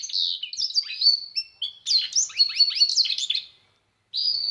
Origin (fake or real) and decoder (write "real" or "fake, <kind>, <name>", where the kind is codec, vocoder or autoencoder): real